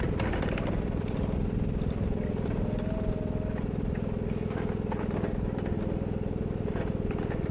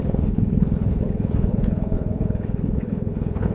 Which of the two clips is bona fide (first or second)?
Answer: first